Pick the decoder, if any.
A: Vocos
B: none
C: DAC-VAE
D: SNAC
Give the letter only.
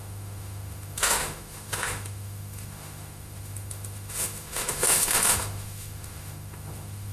C